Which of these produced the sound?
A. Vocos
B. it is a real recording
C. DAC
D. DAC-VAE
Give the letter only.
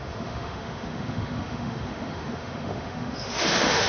D